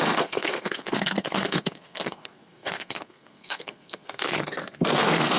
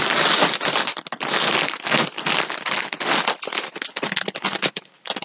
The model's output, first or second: first